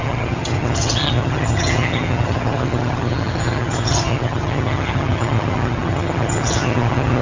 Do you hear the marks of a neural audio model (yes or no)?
yes